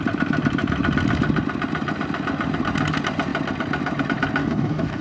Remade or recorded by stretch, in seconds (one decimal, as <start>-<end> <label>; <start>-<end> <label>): 0.0-4.4 recorded; 4.4-5.0 remade